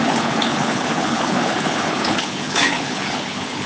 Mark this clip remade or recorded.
remade